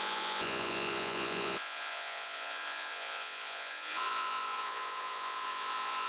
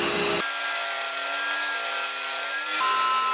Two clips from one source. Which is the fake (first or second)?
first